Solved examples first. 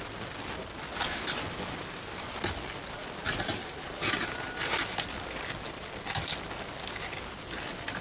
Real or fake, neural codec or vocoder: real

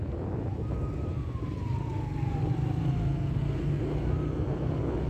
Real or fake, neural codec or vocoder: real